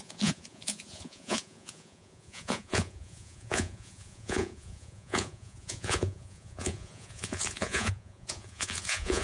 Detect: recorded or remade remade